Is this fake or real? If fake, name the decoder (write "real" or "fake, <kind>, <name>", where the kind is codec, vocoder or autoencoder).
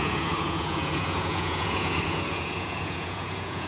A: fake, vocoder, Vocos